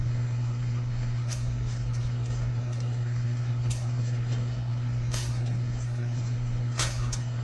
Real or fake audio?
fake